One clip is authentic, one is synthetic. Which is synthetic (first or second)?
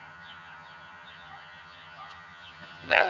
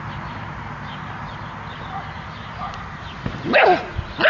first